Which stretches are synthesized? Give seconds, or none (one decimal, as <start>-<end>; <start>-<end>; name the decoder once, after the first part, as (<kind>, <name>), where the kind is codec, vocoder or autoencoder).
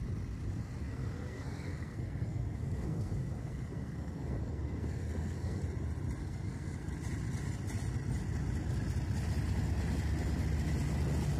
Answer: 0.8-5.6 (codec, SNAC); 6.2-6.9